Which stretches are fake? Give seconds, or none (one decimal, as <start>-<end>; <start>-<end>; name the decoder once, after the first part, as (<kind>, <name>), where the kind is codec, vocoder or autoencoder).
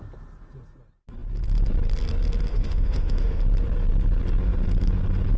2.5-3.4 (autoencoder, DAC-VAE)